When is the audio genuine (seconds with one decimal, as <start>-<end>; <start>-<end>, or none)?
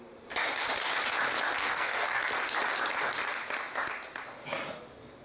0.0-1.6; 2.2-5.2